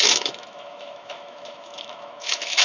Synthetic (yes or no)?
yes